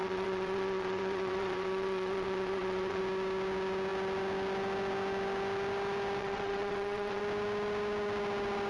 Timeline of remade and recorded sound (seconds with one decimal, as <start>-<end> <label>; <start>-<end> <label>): 0.0-3.0 remade; 3.0-6.2 recorded; 6.2-7.2 remade; 7.2-8.7 recorded